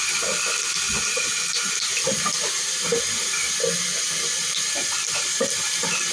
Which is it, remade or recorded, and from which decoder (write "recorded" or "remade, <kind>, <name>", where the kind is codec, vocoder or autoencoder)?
recorded